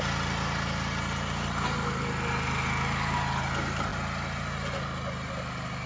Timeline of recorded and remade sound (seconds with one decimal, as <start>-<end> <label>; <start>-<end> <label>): 0.0-5.9 recorded